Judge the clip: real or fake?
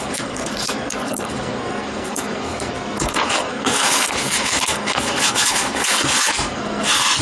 fake